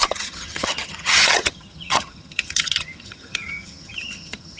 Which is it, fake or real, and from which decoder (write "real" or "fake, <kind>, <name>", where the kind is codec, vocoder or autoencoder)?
fake, vocoder, HiFi-GAN